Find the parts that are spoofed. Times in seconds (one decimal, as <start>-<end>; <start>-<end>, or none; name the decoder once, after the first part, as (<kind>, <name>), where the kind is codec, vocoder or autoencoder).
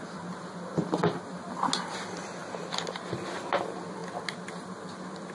none